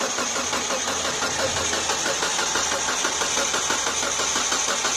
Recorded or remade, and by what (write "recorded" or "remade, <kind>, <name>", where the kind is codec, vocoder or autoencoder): recorded